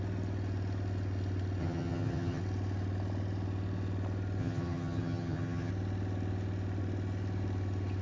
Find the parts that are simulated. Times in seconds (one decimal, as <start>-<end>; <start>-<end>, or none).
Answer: 1.6-2.4; 4.4-5.7